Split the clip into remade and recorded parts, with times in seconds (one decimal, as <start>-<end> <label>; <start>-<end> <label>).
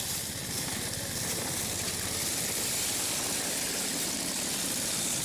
0.0-5.2 recorded